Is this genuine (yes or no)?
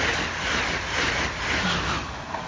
yes